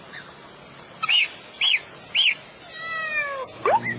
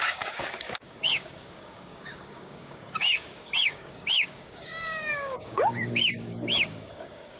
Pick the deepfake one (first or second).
second